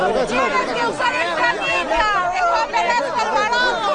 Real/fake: real